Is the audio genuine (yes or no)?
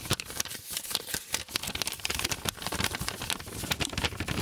yes